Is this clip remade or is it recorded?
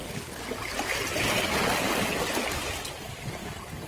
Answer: recorded